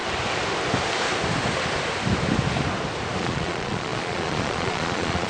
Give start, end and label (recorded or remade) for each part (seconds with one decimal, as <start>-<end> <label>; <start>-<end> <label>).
0.0-3.2 recorded; 3.2-5.3 remade